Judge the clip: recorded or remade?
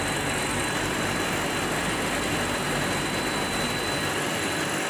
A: recorded